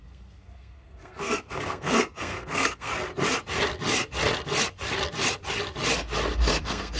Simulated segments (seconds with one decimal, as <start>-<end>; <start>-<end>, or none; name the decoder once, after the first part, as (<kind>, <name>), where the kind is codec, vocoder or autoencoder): 0.0-2.9 (codec, SNAC); 6.6-7.0